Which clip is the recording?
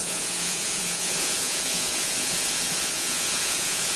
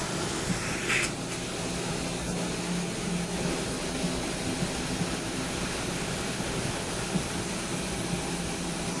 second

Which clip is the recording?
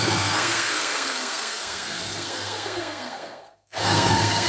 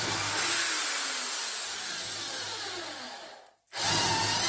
second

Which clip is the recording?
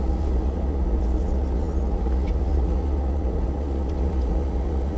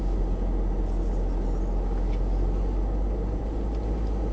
second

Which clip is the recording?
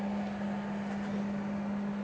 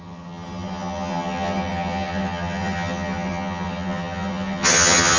first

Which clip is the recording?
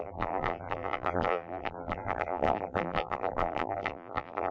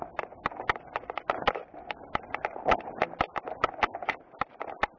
second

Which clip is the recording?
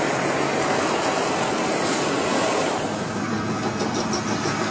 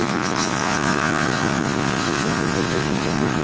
first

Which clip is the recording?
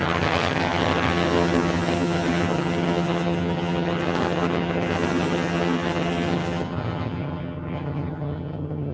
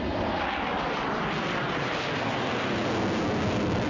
second